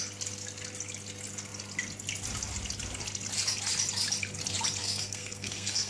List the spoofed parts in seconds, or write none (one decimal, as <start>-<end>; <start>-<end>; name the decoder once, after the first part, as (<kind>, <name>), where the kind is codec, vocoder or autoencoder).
4.8-5.9 (codec, SNAC)